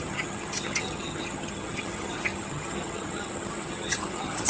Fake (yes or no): yes